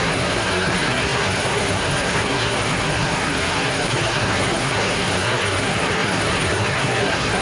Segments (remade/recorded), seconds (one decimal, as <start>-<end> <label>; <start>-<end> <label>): 0.0-7.4 remade